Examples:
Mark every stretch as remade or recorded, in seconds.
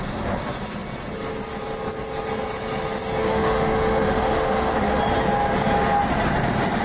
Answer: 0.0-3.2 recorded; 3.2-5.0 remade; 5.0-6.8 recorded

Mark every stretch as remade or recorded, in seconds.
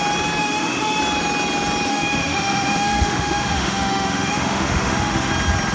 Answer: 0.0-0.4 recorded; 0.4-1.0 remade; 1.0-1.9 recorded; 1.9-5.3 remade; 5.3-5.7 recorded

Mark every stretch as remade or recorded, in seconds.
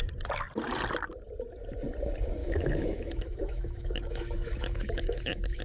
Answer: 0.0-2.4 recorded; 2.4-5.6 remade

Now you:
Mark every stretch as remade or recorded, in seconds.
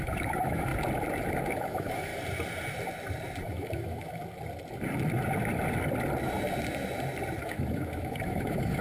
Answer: 0.0-0.7 remade; 0.7-1.3 recorded; 1.3-2.1 remade; 2.1-3.4 recorded; 3.4-4.2 remade; 4.2-7.4 recorded; 7.4-8.8 remade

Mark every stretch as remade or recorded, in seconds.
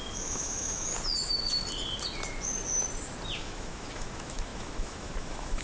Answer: 0.0-0.9 remade; 0.9-3.4 recorded; 3.4-5.6 remade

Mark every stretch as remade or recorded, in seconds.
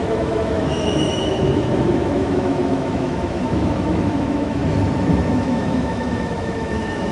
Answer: 0.0-4.6 remade; 4.6-5.3 recorded; 5.3-7.1 remade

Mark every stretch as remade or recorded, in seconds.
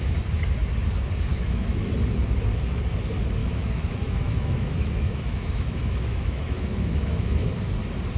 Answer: 0.0-1.3 recorded; 1.3-1.9 remade; 1.9-3.4 recorded; 3.4-7.5 remade; 7.5-8.2 recorded